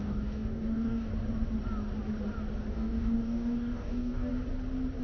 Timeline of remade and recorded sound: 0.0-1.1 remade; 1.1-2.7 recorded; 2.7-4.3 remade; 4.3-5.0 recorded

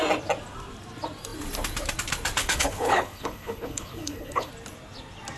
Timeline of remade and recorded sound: 0.0-2.4 recorded; 2.4-4.5 remade; 4.5-5.4 recorded

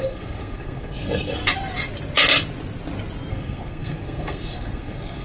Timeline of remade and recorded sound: 0.0-1.4 remade; 1.4-3.3 recorded; 3.3-5.2 remade